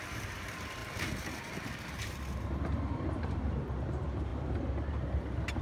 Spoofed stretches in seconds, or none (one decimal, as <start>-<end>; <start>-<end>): 0.0-5.6